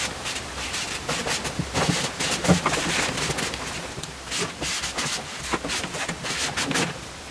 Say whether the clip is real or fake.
real